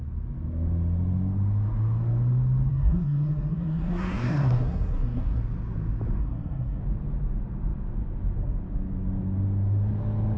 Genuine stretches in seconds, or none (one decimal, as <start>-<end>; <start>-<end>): 0.0-2.7; 5.4-6.2; 6.8-10.4